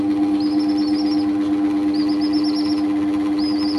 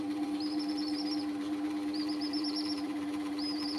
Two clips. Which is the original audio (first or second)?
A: first